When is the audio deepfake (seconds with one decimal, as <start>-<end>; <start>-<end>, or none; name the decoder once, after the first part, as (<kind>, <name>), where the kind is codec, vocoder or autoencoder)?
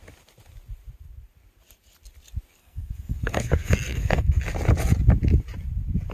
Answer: 2.6-4.4 (codec, SNAC)